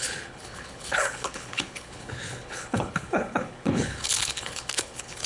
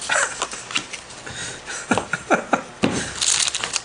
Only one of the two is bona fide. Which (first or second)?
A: second